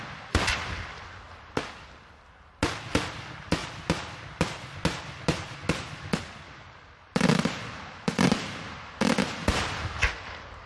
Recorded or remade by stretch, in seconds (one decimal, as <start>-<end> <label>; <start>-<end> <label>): 0.0-10.7 recorded